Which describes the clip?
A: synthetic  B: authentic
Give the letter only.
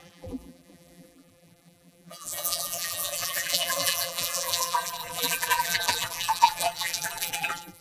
A